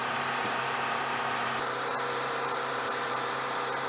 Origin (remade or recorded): remade